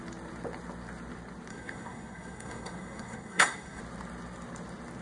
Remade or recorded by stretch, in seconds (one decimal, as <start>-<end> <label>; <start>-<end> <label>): 0.0-1.5 recorded; 1.5-3.8 remade; 3.8-5.0 recorded